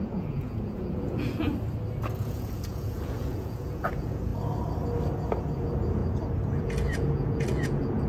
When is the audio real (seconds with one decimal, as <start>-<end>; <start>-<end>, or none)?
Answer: 1.5-2.2; 4.3-5.4; 6.0-6.6